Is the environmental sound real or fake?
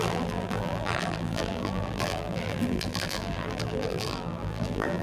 fake